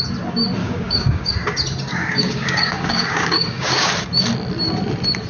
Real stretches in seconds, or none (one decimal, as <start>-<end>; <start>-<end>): 0.0-0.6; 1.3-1.9; 3.9-5.3